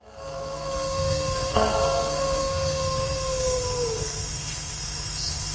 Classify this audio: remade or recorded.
remade